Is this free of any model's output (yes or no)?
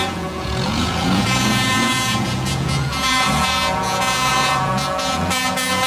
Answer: no